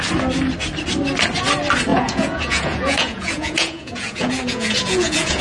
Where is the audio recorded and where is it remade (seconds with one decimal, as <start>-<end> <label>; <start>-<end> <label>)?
0.0-1.9 recorded; 1.9-5.4 remade